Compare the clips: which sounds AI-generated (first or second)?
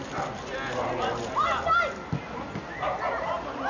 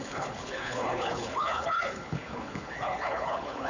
second